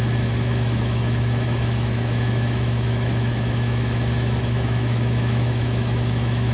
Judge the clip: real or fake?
fake